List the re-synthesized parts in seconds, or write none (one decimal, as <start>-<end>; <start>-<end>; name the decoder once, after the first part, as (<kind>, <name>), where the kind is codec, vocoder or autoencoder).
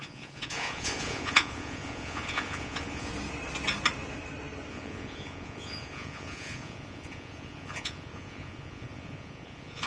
0.0-3.1 (vocoder, Vocos); 4.7-9.9